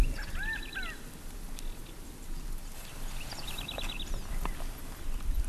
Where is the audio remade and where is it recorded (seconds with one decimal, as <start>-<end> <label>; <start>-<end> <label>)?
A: 0.0-5.5 recorded